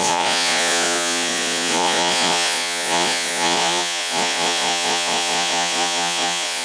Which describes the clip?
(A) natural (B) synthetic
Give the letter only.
B